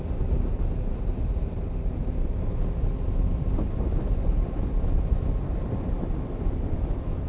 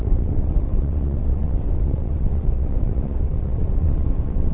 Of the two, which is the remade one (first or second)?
second